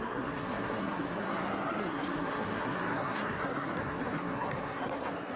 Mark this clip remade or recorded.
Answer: remade